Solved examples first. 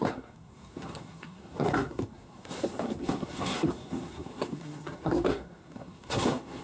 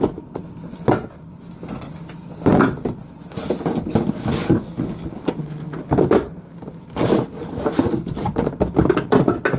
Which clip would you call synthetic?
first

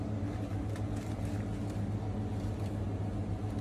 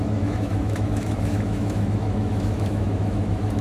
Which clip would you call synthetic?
second